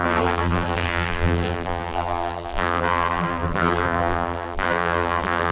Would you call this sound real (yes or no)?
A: no